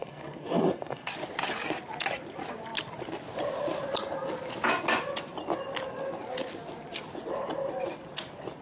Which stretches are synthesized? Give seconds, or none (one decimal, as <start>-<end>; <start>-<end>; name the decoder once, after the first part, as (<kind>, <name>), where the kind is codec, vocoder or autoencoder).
0.0-1.1 (codec, SNAC)